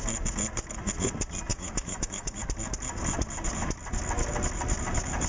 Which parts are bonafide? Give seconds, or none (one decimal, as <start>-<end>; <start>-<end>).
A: 0.0-1.5; 2.4-5.3